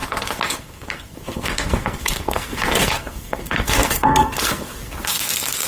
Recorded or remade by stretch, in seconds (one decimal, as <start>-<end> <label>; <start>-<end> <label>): 0.0-5.7 remade